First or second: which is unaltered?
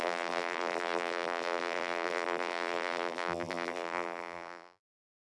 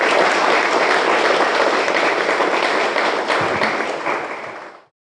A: second